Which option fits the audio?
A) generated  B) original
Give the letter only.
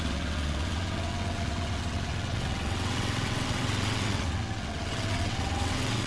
A